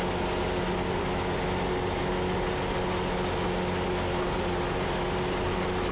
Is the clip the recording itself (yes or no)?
yes